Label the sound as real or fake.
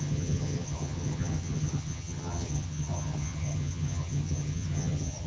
fake